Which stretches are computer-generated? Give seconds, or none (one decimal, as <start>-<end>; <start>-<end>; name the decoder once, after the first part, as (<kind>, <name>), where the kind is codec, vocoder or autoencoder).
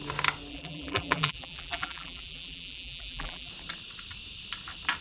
0.5-3.5 (vocoder, BigVGAN v2)